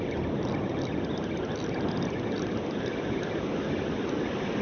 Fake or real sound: real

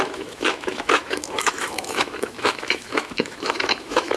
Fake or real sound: fake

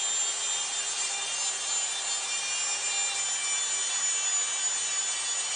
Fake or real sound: real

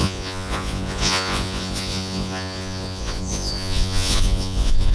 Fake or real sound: fake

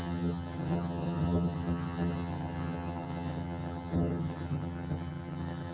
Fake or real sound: fake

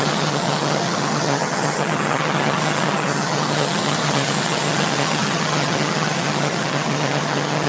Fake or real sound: fake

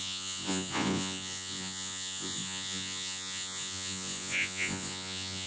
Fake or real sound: fake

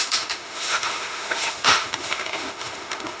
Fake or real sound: fake